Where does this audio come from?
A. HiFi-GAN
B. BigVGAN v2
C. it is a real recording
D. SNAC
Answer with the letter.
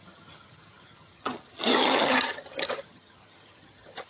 A